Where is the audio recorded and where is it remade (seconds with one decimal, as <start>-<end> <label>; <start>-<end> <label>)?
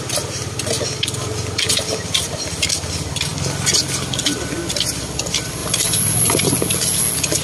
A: 0.0-5.6 recorded; 5.6-6.3 remade; 6.3-7.4 recorded